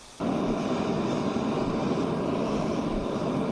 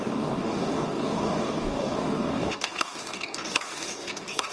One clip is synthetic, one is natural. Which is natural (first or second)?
first